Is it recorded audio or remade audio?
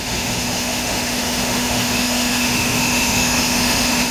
remade